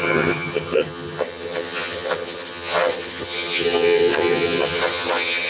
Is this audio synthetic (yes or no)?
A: yes